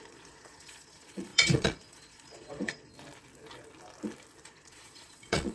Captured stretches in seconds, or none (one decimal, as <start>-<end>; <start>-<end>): 2.9-4.4